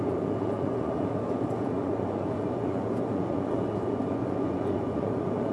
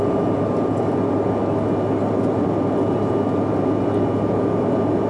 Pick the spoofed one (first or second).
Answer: first